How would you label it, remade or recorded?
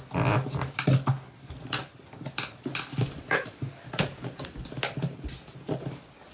recorded